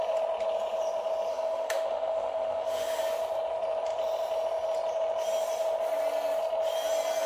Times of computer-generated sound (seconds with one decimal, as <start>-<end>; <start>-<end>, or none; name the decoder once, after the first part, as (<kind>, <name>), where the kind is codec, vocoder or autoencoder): 1.3-3.0 (autoencoder, DAC-VAE)